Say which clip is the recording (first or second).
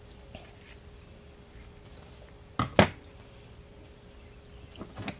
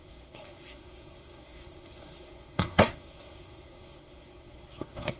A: first